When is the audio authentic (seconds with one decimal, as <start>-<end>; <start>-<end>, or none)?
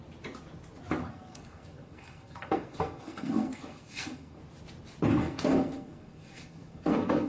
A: 0.0-1.1; 4.4-5.2